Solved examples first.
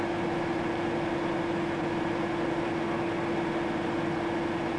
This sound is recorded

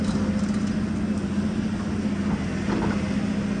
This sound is recorded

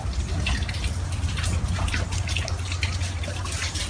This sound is recorded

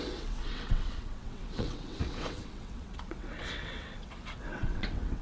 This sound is remade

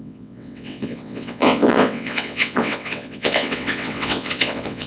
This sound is remade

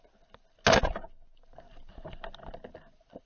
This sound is recorded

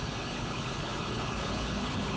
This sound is remade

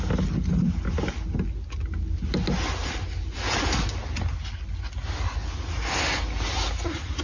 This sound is recorded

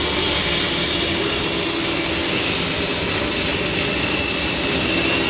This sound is recorded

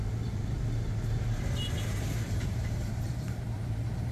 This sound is remade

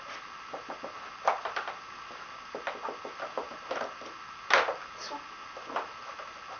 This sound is recorded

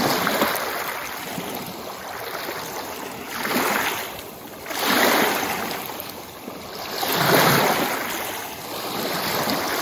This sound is recorded